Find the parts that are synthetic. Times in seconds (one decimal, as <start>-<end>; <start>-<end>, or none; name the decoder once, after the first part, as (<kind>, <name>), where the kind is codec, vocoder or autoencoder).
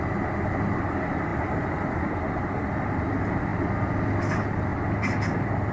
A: 1.3-2.1 (vocoder, BigVGAN v2)